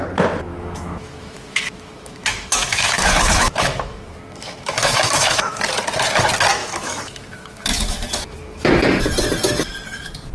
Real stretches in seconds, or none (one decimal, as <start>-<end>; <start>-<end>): 0.0-0.5; 5.6-6.6; 8.8-10.3